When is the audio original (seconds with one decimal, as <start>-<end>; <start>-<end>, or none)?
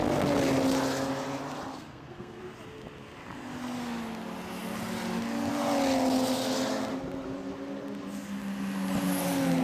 0.0-1.7; 2.4-9.6